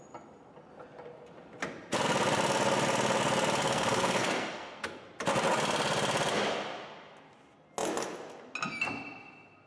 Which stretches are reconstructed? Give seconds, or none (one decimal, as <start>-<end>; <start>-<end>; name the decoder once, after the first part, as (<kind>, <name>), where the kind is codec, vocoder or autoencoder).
3.6-5.0 (codec, SNAC)